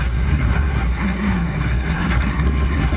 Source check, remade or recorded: remade